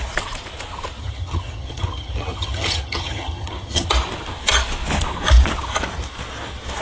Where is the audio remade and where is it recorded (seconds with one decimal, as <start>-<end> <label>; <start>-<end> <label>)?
0.0-1.0 recorded; 1.0-3.9 remade; 3.9-6.8 recorded